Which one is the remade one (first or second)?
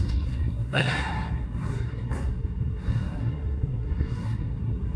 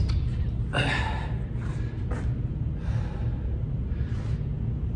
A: first